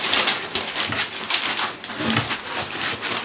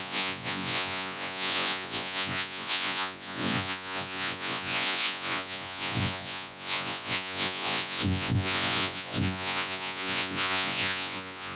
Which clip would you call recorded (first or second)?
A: first